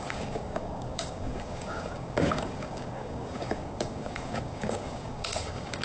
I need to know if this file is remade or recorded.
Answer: remade